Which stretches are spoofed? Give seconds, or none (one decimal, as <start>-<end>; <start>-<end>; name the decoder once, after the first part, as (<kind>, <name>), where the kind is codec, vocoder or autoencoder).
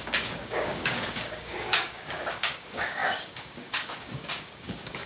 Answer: 0.0-5.1 (codec, DAC)